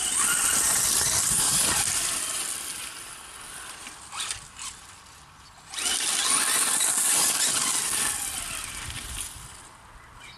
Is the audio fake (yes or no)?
no